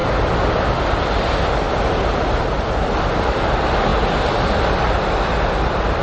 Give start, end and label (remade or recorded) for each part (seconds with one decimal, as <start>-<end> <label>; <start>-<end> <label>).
0.0-1.5 recorded; 1.5-6.0 remade